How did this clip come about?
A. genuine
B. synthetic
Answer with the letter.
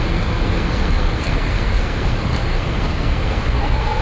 B